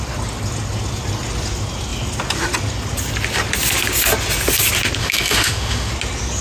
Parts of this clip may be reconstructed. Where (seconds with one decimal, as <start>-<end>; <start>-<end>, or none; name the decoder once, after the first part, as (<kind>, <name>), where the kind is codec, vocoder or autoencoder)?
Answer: 5.0-5.9 (autoencoder, DAC-VAE)